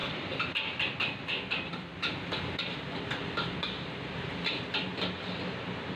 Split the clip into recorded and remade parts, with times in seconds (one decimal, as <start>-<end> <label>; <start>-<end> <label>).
0.0-0.5 remade; 0.5-3.2 recorded; 3.2-3.9 remade; 3.9-6.0 recorded